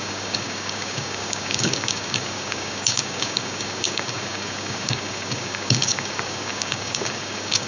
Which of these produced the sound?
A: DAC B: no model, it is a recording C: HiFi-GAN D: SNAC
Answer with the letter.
A